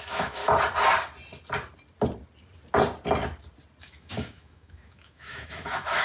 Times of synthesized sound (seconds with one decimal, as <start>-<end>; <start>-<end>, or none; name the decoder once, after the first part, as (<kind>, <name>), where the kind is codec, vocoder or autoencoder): 0.0-0.4 (autoencoder, DAC-VAE); 3.8-6.0